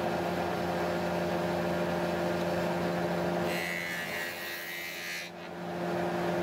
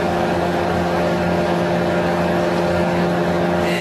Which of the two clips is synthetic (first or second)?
second